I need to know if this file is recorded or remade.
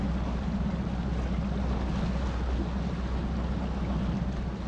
recorded